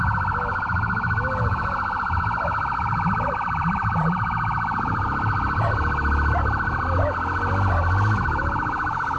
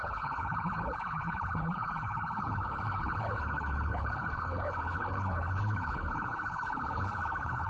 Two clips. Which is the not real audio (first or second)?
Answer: second